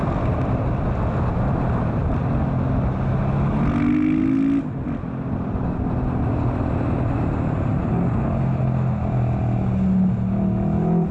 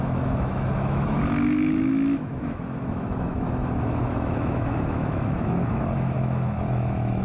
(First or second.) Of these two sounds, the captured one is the first